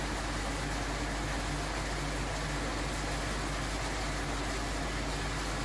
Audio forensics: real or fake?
real